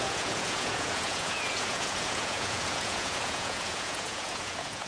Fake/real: fake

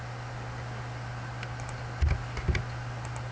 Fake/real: real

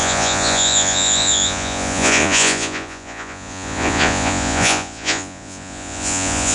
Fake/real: fake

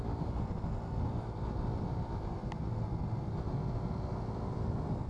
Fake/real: real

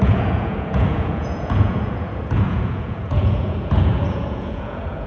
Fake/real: fake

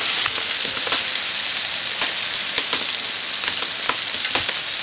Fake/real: real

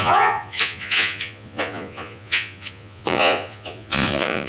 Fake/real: fake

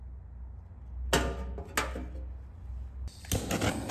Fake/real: real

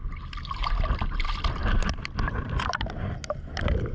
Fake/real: real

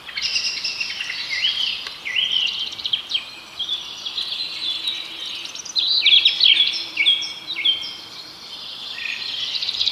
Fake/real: real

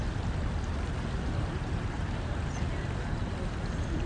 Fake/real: real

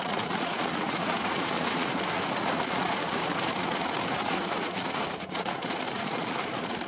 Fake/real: fake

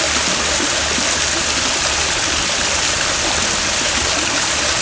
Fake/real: real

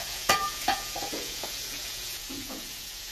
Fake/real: fake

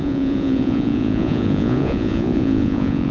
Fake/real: fake